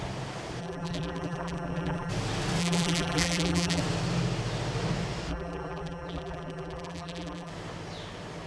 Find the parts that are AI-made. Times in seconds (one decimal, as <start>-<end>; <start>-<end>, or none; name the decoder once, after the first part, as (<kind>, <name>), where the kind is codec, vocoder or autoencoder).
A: 0.6-2.1 (vocoder, BigVGAN v2); 2.6-3.8; 5.3-7.5